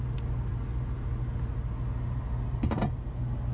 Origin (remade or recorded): recorded